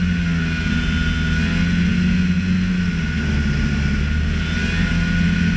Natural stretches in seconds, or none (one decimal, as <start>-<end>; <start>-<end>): 0.0-5.6